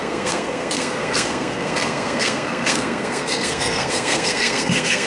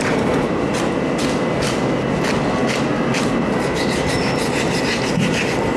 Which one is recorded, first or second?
second